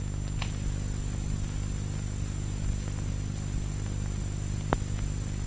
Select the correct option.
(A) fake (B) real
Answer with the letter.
B